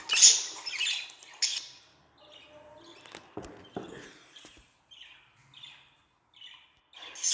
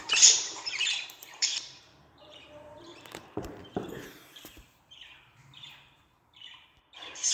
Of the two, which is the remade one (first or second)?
second